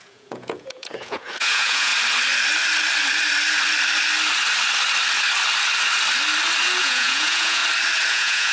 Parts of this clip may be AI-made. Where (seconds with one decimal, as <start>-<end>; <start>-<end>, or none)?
0.0-1.9; 6.8-7.6; 8.1-8.5